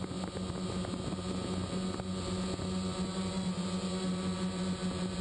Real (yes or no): yes